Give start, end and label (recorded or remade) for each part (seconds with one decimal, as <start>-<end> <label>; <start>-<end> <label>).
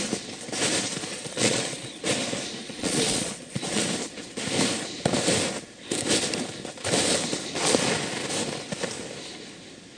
0.0-1.1 recorded; 1.1-2.0 remade; 2.0-2.6 recorded; 2.6-3.9 remade; 3.9-10.0 recorded